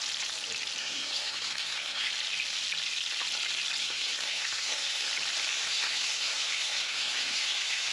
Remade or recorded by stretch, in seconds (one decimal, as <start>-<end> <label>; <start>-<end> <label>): 0.0-0.8 recorded; 0.8-2.1 remade; 2.1-3.8 recorded; 3.8-5.1 remade; 5.1-5.5 recorded; 5.5-7.9 remade